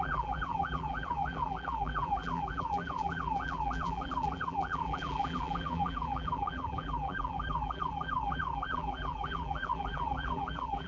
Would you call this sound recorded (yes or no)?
no